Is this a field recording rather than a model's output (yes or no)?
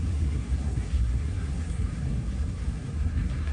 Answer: no